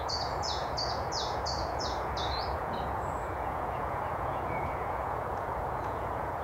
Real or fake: fake